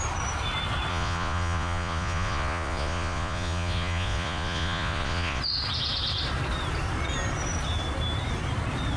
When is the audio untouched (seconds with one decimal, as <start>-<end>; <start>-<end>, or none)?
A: 0.0-0.9; 5.4-9.0